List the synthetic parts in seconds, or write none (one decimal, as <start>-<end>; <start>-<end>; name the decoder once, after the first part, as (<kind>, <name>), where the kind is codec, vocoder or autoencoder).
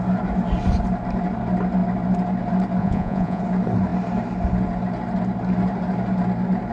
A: 2.8-3.4 (vocoder, Vocos)